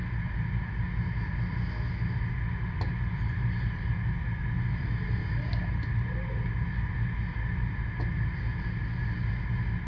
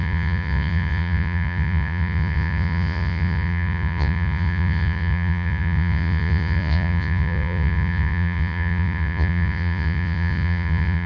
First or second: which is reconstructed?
second